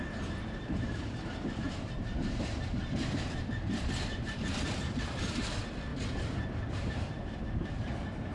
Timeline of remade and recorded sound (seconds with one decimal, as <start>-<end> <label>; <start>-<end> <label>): 0.0-5.9 remade; 5.9-6.7 recorded; 6.7-8.3 remade